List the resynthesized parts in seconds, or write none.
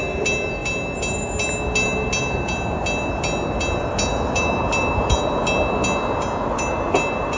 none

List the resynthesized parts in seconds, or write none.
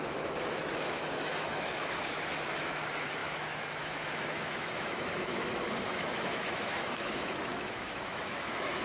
0.0-8.8 (autoencoder, DAC-VAE)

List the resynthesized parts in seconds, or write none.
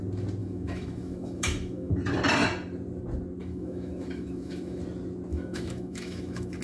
0.4-1.9 (autoencoder, DAC-VAE); 3.4-4.8; 5.3-6.6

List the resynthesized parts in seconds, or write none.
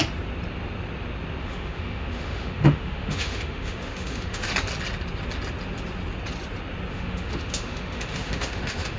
1.4-4.5 (autoencoder, DAC-VAE); 6.9-9.0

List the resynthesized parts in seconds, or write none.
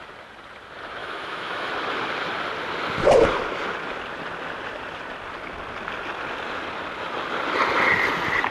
1.0-1.7 (autoencoder, DAC-VAE)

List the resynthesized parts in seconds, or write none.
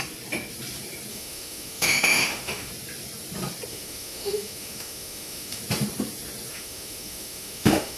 1.1-2.7 (autoencoder, DAC-VAE); 3.7-5.6; 6.5-8.0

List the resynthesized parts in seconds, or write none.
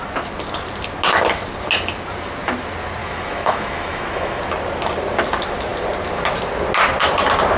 3.0-4.4 (autoencoder, DAC-VAE)